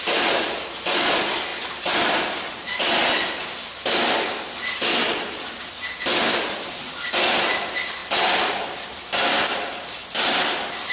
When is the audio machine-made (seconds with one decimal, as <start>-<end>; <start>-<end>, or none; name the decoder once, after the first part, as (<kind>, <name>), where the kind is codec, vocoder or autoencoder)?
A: none